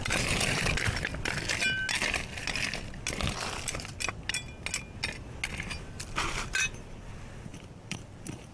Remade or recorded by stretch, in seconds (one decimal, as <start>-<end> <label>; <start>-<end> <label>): 0.0-7.5 recorded; 7.5-8.5 remade